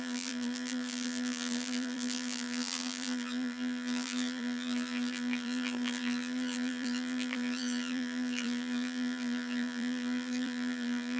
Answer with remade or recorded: remade